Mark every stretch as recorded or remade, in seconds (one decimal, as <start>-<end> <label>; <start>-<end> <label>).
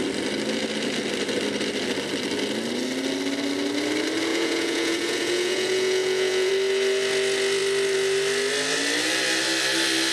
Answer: 0.0-4.3 recorded; 4.3-6.5 remade; 6.5-10.1 recorded